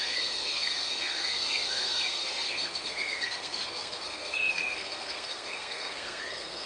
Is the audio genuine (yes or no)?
no